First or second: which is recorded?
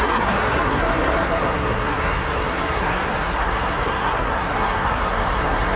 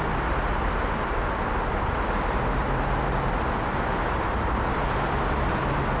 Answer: second